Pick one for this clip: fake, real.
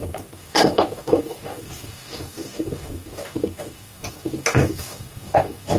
fake